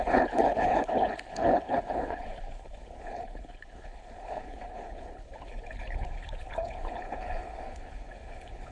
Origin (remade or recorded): remade